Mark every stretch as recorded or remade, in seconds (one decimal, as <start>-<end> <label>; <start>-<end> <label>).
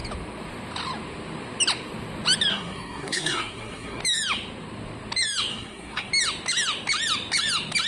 0.0-2.5 recorded; 2.5-4.0 remade; 4.0-5.5 recorded; 5.5-6.1 remade; 6.1-7.9 recorded